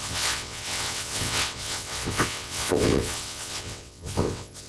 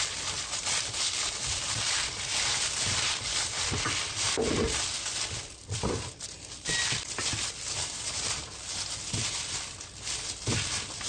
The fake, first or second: first